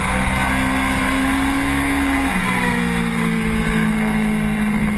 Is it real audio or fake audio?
fake